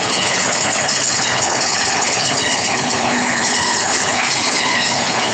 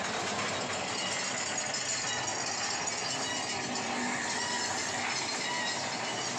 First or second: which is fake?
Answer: first